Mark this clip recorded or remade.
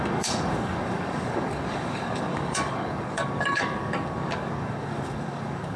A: remade